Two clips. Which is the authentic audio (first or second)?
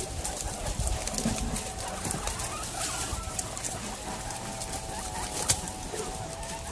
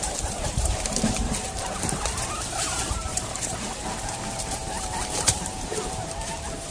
first